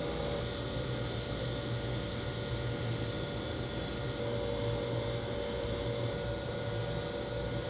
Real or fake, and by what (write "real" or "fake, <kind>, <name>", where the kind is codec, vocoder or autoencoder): real